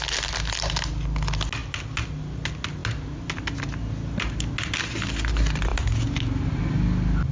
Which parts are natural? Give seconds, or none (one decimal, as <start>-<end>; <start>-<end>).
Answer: 0.0-7.3